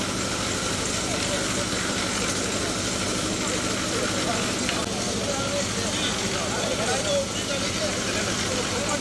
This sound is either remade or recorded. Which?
recorded